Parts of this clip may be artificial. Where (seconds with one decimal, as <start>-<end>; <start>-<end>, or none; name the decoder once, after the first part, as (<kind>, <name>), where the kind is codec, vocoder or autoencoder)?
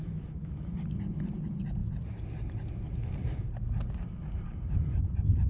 0.0-0.7 (autoencoder, DAC-VAE)